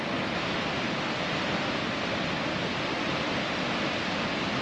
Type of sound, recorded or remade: recorded